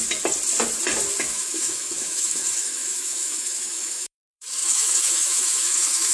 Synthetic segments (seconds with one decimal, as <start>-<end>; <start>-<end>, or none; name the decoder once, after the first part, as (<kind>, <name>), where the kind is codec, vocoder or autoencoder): 1.2-6.1 (autoencoder, DAC-VAE)

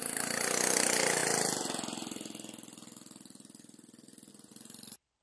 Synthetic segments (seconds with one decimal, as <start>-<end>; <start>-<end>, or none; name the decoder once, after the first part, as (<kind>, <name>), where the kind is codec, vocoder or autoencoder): none